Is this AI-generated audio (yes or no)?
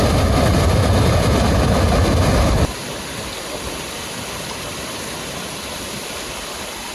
no